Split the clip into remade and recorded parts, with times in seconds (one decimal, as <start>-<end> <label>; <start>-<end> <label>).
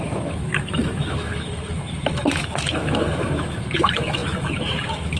0.0-5.2 remade